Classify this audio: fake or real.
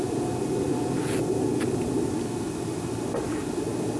real